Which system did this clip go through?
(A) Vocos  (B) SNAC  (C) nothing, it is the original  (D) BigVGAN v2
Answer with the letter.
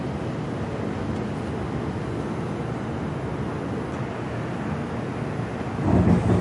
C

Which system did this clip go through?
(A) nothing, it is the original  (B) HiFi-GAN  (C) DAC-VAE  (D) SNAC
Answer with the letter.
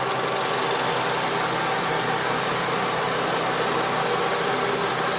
A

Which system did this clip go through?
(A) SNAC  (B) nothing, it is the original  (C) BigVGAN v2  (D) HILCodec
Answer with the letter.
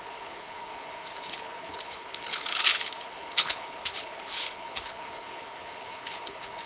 D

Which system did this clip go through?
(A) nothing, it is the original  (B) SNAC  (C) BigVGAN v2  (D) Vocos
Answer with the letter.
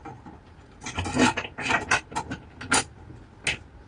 A